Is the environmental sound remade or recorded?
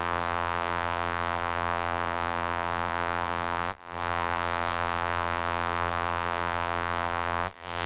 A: remade